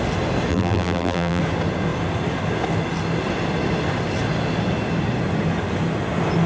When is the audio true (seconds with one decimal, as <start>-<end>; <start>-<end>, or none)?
0.0-0.5; 1.4-6.5